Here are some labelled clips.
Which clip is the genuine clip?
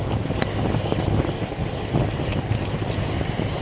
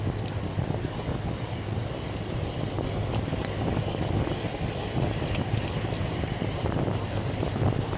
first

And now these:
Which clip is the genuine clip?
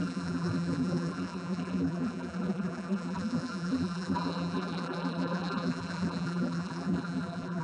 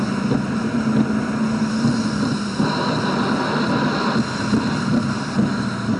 second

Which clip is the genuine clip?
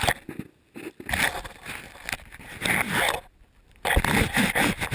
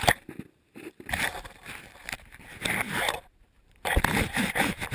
first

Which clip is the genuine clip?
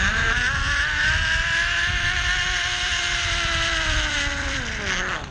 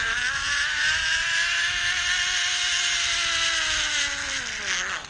second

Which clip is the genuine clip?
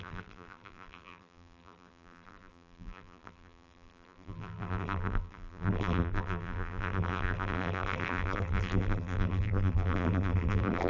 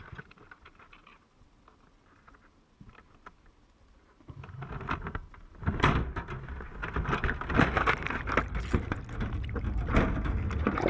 second